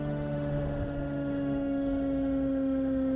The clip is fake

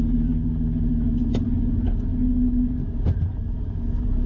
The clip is real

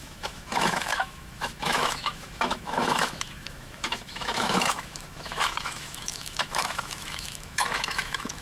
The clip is fake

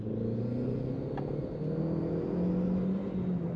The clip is real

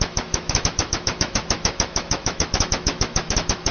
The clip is fake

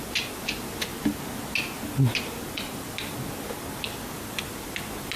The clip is real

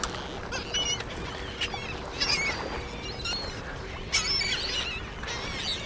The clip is real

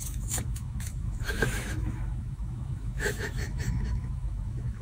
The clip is fake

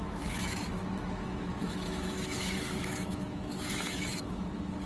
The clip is fake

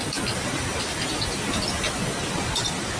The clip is real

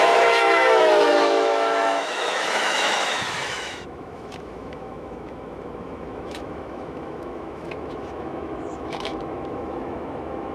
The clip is fake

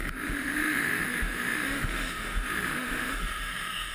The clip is fake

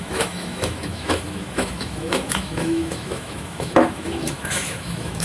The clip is fake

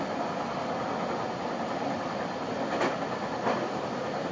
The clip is real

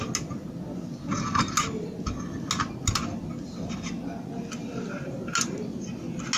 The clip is real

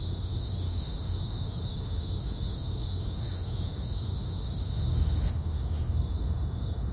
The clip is fake